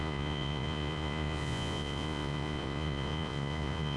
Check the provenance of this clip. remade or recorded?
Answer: remade